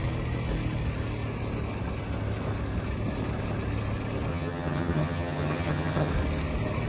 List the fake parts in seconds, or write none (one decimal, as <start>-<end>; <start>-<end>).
4.3-6.1